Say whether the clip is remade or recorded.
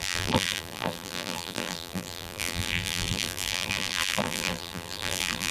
remade